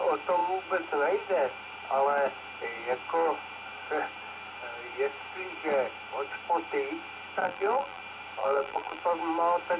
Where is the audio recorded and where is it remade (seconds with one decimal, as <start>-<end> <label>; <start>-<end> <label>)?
0.0-7.4 recorded; 7.4-8.0 remade; 8.0-8.4 recorded; 8.4-9.0 remade; 9.0-9.8 recorded